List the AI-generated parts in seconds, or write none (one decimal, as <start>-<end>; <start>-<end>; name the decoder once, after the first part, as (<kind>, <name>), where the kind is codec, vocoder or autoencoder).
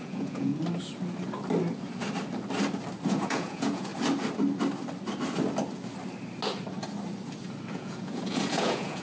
0.0-0.5 (vocoder, Vocos); 3.1-3.9; 7.7-9.0